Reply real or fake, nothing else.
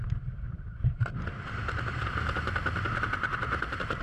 real